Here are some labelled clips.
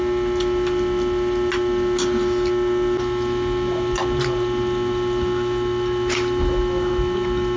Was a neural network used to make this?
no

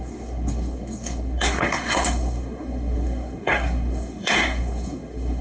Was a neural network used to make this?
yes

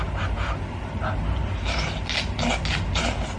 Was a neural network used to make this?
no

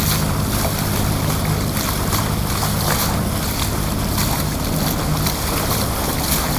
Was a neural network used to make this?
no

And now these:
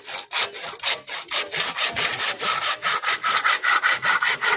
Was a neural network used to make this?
no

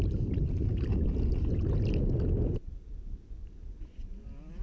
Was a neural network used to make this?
no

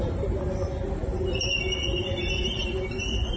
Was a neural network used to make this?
no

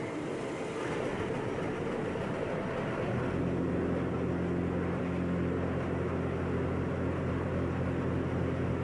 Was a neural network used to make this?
no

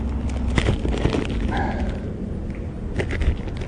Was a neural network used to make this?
no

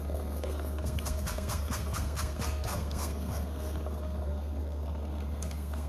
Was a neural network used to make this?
yes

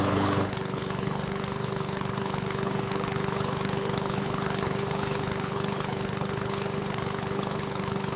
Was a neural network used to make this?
yes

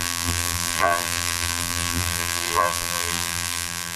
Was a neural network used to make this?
yes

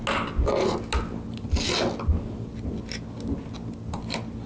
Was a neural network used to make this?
no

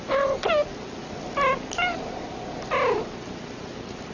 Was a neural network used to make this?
no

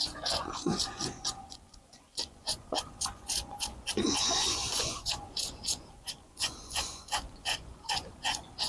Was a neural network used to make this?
yes